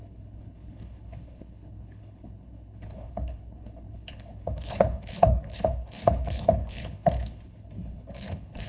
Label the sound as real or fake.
fake